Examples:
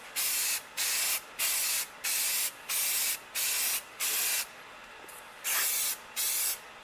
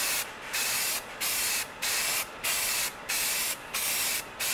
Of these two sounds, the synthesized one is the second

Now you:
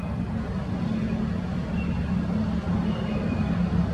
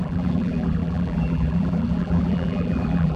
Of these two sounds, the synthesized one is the second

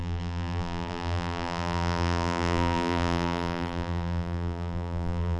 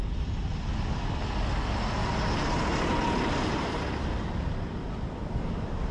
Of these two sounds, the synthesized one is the first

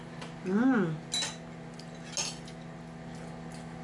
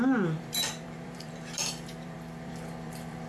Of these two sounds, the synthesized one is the second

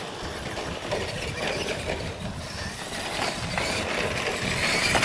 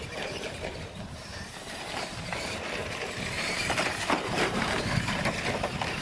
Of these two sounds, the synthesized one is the second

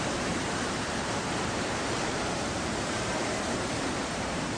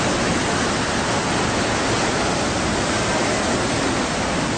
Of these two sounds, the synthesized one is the first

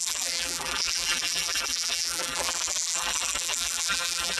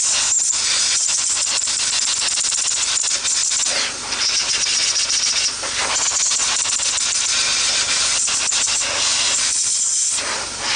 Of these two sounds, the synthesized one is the first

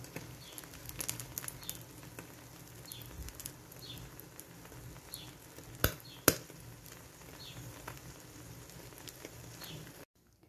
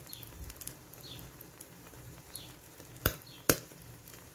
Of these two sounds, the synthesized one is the second